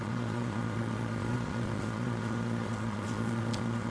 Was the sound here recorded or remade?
remade